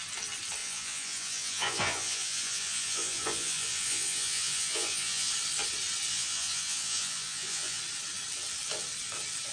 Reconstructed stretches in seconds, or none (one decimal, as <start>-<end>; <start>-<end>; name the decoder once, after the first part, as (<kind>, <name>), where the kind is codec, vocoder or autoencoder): 0.6-5.3 (vocoder, Vocos); 6.1-7.8